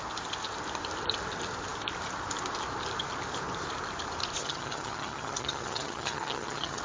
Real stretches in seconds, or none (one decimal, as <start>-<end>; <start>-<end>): 0.0-4.4